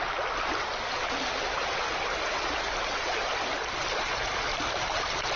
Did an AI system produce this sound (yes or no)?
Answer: no